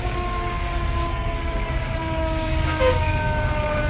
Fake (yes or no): yes